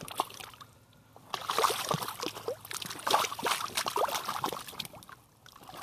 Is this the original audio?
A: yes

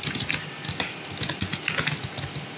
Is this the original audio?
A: yes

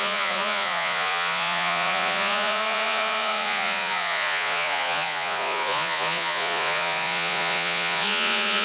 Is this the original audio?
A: no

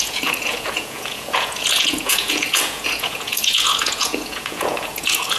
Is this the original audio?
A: no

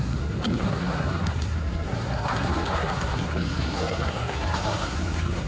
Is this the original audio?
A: no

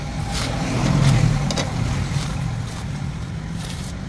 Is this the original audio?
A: no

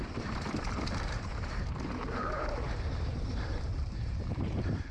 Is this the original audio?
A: no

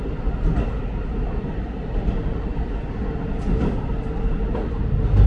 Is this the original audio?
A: yes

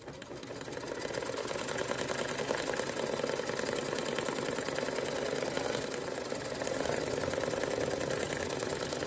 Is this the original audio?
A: yes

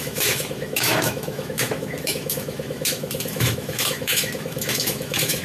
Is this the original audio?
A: no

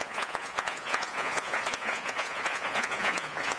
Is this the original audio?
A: no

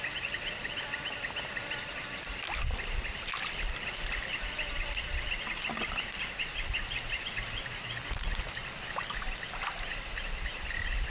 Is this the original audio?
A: yes